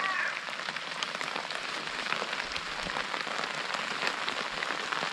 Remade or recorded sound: recorded